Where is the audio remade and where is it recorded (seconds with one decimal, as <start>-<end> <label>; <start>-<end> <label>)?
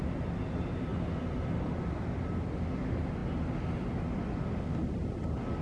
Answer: 0.0-5.6 recorded